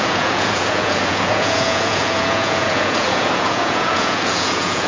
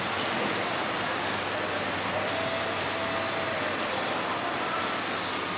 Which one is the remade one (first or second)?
first